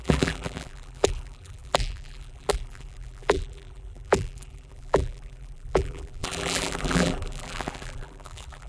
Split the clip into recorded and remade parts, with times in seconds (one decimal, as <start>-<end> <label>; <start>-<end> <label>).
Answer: 0.0-8.7 remade